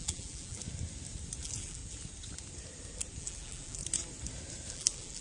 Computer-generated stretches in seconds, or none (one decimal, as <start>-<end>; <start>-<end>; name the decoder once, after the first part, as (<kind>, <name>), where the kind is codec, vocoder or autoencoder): 0.0-0.6 (vocoder, BigVGAN v2); 1.4-1.8; 3.2-3.8; 4.7-5.2